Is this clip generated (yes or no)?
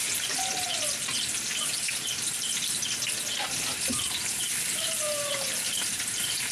no